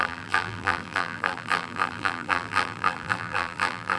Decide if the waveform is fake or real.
fake